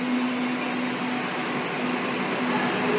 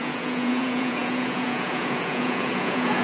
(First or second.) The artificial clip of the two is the second